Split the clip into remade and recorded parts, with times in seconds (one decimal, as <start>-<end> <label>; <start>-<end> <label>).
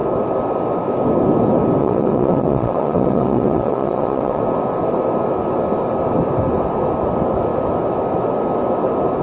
0.0-1.8 recorded; 1.8-4.4 remade; 4.4-9.2 recorded